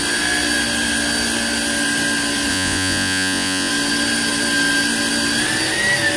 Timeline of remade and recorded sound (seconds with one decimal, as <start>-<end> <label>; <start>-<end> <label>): 0.0-2.5 recorded; 2.5-3.7 remade; 3.7-6.2 recorded